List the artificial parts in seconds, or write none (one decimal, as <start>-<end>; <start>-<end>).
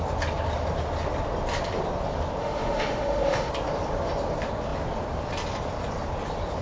2.4-3.5